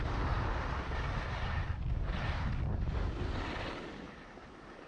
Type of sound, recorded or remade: recorded